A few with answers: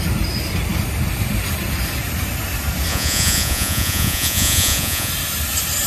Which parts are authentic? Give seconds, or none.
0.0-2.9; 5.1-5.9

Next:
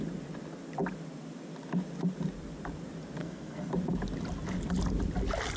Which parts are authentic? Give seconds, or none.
0.0-3.2; 3.7-5.6

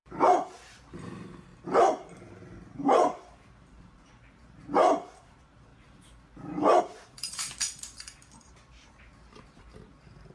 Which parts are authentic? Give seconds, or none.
5.7-6.8